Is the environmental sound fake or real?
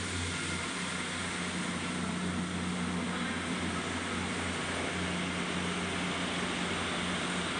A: real